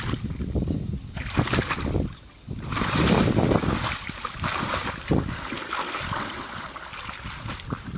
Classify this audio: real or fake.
real